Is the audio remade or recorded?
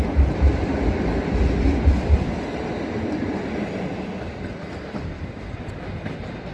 recorded